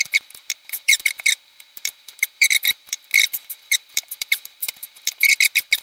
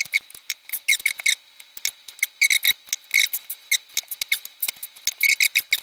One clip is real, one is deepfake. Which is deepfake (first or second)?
first